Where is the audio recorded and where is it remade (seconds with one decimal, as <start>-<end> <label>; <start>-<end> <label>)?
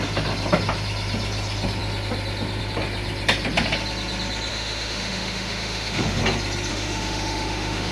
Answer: 0.0-4.5 recorded; 4.5-6.2 remade; 6.2-6.7 recorded; 6.7-7.9 remade